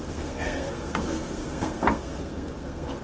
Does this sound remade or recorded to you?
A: remade